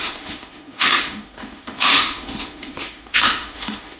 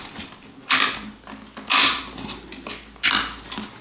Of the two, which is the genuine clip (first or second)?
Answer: second